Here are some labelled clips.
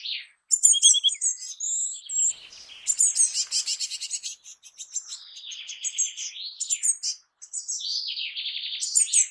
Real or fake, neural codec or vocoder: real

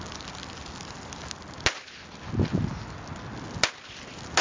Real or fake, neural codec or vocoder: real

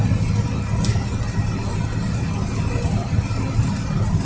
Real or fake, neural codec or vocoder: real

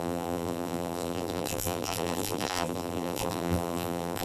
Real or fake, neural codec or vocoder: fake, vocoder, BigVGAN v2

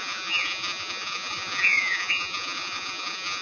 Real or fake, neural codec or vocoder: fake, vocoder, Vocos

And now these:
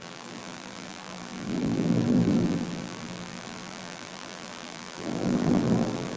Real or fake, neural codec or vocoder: fake, vocoder, BigVGAN v2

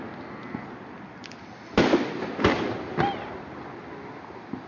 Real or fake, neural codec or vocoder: real